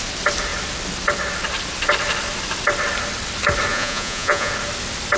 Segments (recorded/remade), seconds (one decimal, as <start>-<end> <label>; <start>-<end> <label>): 0.0-3.7 recorded; 3.7-4.5 remade; 4.5-5.2 recorded